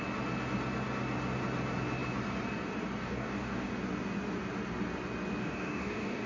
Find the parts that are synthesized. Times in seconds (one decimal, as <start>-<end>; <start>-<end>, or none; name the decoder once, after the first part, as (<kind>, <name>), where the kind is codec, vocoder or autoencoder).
3.0-3.7 (codec, DAC); 5.4-6.3